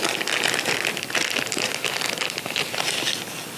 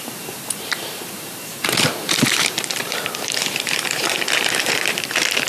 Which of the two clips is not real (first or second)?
second